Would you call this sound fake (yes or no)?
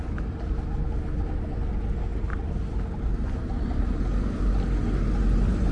no